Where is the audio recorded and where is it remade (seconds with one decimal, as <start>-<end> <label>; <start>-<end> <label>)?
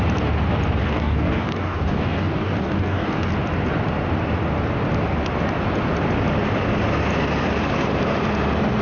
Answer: 0.0-0.8 recorded; 0.8-3.3 remade; 3.3-8.8 recorded